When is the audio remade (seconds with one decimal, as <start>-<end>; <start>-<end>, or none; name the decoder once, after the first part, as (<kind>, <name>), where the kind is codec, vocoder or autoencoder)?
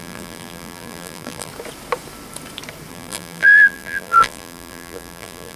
0.0-1.5 (vocoder, BigVGAN v2); 2.9-5.6